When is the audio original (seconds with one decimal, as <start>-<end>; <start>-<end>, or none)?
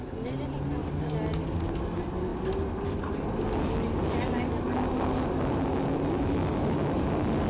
0.0-7.5